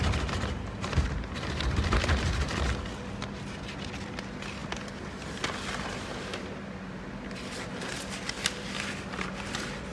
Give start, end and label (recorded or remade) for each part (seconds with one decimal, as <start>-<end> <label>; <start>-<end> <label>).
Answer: 0.0-9.9 recorded